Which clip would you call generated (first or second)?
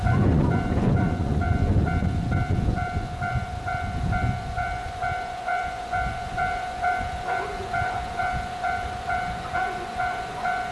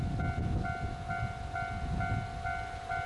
first